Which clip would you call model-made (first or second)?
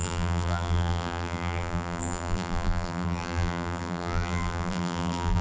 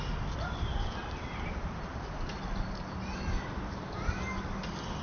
first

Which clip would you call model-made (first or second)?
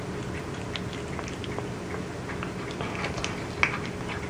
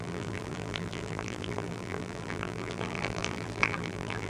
second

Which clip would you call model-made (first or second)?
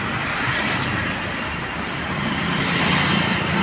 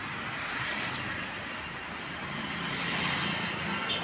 first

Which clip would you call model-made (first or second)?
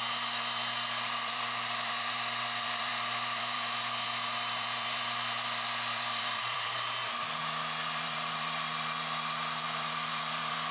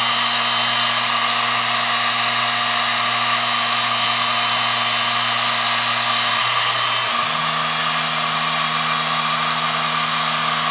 first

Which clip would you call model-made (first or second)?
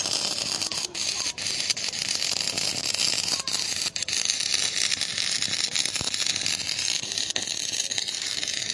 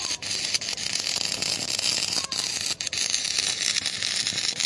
first